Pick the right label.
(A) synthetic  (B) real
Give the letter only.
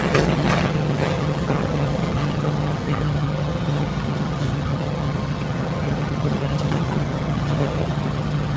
A